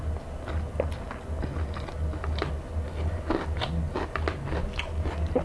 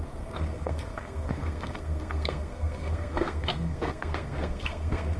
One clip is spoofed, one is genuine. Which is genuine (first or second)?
first